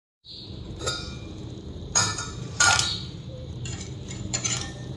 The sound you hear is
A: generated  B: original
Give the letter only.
A